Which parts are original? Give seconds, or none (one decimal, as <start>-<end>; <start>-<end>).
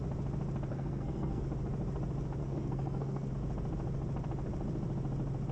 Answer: 0.0-0.7; 1.4-2.4; 3.3-5.5